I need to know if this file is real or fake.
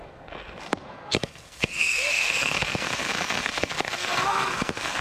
fake